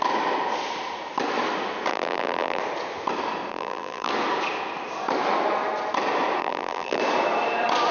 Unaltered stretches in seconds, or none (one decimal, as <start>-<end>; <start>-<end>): 0.0-1.9; 2.6-3.5; 4.1-6.4; 7.0-7.9